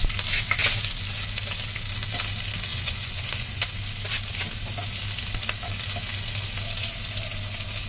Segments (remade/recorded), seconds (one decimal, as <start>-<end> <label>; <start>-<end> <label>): 0.0-2.7 recorded; 2.7-3.6 remade; 3.6-7.9 recorded